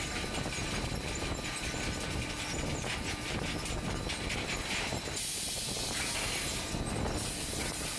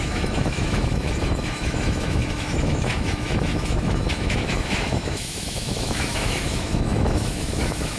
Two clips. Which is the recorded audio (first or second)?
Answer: first